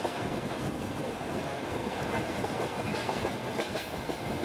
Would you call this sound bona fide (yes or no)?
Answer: no